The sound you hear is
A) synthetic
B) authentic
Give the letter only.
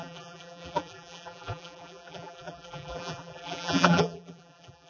A